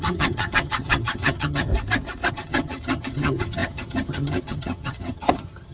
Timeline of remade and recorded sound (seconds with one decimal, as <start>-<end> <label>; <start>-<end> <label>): 0.0-1.7 remade; 1.7-2.3 recorded; 2.3-5.7 remade